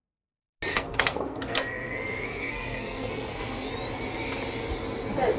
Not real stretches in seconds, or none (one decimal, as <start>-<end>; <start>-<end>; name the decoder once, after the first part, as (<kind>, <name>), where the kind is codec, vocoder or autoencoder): 0.7-3.7 (codec, SNAC)